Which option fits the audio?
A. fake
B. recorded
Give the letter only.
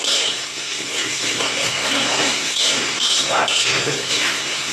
A